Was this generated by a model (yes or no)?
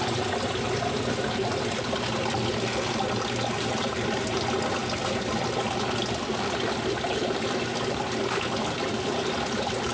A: no